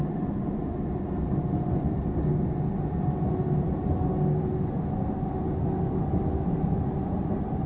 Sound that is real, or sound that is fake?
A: real